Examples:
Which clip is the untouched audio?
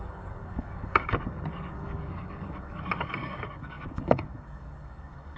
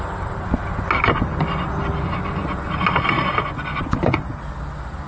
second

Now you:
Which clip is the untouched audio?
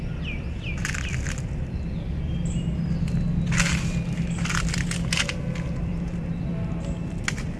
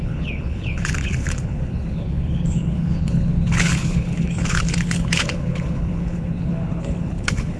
first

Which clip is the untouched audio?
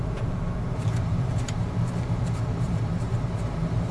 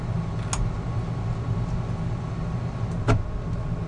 second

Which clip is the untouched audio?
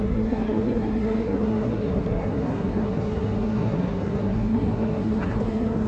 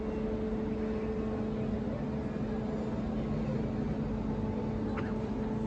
second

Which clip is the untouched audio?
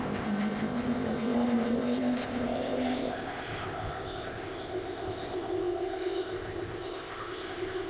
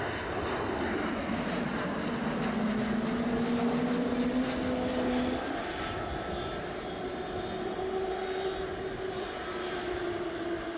second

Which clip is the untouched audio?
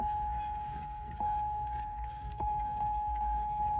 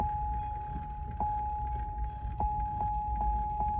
second